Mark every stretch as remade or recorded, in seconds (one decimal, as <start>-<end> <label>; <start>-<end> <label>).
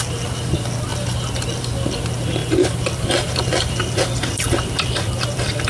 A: 0.0-2.4 recorded; 2.4-5.7 remade